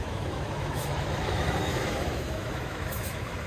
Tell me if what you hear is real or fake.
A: fake